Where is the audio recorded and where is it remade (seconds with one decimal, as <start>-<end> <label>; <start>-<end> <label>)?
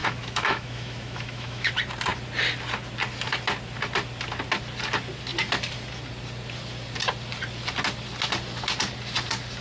0.0-1.7 remade; 1.7-9.6 recorded